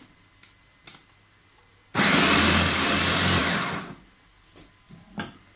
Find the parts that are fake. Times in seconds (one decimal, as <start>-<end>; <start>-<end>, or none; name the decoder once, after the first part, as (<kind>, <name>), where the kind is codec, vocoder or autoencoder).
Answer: none